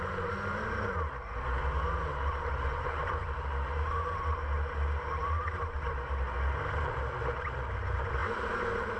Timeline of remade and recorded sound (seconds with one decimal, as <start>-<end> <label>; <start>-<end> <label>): 0.0-9.0 recorded